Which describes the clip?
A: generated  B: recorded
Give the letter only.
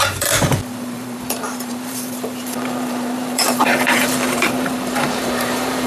A